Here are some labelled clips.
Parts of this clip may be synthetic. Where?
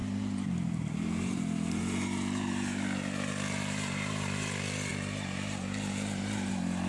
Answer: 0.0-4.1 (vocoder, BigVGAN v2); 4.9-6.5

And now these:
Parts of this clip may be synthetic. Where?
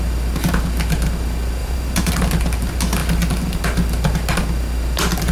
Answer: 1.6-2.1 (vocoder, BigVGAN v2)